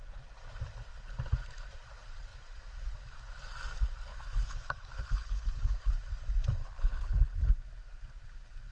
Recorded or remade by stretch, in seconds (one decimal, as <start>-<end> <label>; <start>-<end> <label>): 0.0-4.1 recorded; 4.1-5.9 remade; 5.9-6.6 recorded; 6.6-7.5 remade; 7.5-8.7 recorded